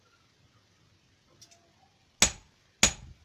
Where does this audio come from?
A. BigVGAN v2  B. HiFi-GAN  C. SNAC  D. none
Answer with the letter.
D